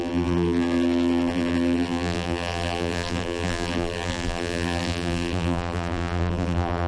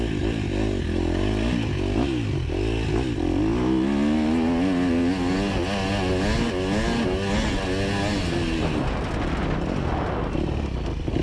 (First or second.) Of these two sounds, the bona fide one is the second